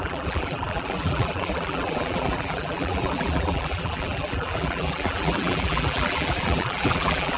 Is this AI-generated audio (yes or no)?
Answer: yes